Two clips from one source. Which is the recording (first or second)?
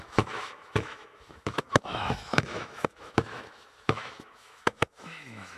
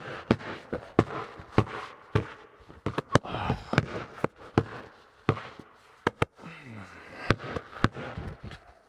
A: second